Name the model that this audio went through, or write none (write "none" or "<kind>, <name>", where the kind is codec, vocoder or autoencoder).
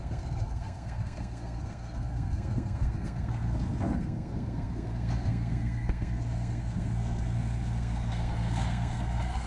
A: codec, SNAC